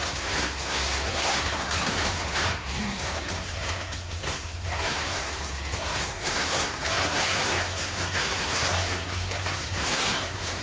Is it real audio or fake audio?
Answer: fake